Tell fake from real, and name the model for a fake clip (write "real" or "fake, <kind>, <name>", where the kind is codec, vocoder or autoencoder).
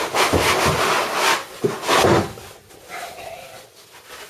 real